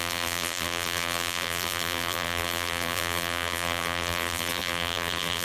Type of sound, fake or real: fake